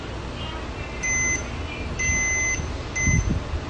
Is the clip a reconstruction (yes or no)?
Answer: no